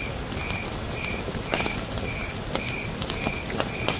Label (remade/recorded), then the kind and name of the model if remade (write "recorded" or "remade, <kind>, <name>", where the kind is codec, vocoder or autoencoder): recorded